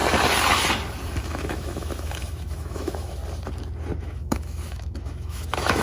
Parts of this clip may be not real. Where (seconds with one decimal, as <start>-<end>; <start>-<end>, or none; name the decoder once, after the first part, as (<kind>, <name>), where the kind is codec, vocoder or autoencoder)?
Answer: 1.2-3.2 (autoencoder, DAC-VAE); 4.0-5.8